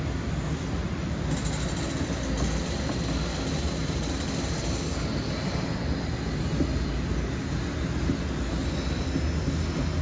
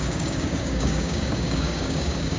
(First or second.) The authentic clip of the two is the first